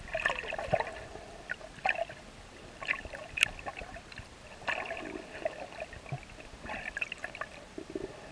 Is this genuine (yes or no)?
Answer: yes